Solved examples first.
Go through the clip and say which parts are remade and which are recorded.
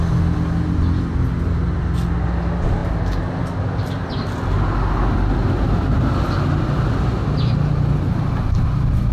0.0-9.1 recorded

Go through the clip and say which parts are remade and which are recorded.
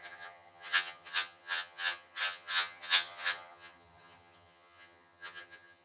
0.0-5.8 remade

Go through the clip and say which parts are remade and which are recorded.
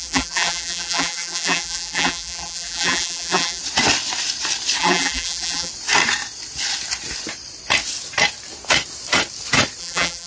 0.0-3.6 remade; 3.6-4.8 recorded; 4.8-5.7 remade; 5.7-9.8 recorded; 9.8-10.3 remade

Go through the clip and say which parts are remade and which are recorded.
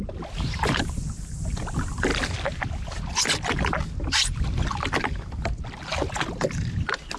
0.0-7.2 recorded